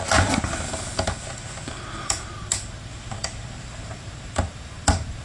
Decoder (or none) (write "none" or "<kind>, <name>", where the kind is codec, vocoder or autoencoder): none